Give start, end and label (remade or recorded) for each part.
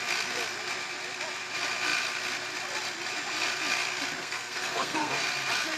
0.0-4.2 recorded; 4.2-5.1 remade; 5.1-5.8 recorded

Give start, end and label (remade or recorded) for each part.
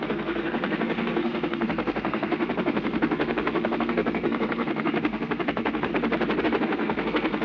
0.0-5.9 remade; 5.9-6.4 recorded; 6.4-7.4 remade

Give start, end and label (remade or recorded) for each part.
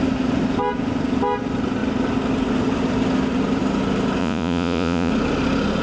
0.0-4.2 recorded; 4.2-5.1 remade; 5.1-5.8 recorded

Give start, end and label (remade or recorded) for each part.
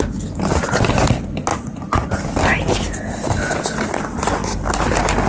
0.0-1.5 recorded; 1.5-2.1 remade; 2.1-5.3 recorded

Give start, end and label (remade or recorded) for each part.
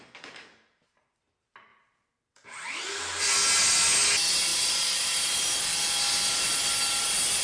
0.0-1.7 recorded; 1.7-3.3 remade; 3.3-4.5 recorded; 4.5-5.6 remade; 5.6-7.4 recorded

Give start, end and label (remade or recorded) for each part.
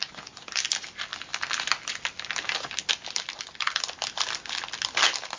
0.0-5.4 recorded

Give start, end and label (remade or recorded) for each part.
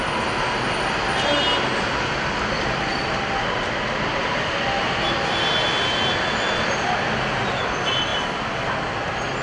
0.0-9.4 recorded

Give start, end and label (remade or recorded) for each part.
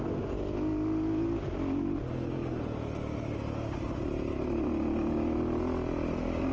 0.0-6.5 recorded